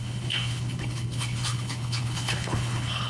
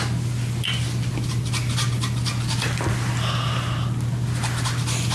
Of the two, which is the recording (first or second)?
second